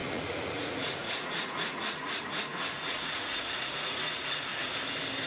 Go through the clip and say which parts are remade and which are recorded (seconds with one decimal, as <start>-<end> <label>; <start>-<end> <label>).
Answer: 0.0-4.5 remade; 4.5-5.3 recorded